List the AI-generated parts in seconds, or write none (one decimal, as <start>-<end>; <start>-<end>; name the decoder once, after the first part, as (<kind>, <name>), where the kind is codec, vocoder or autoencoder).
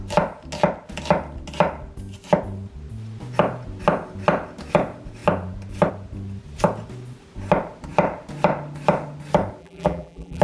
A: 9.6-10.4 (vocoder, BigVGAN v2)